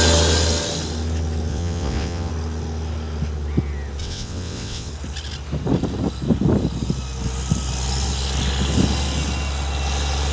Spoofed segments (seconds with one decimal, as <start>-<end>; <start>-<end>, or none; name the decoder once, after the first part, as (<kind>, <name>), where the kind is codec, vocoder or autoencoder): 1.5-2.3 (vocoder, WaveNeXt); 4.0-4.9